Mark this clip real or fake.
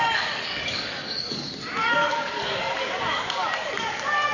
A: fake